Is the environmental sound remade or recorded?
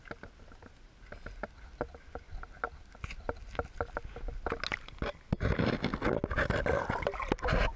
recorded